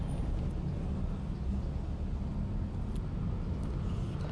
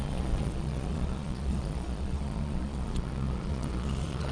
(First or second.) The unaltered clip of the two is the first